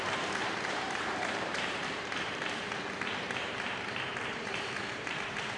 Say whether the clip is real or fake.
fake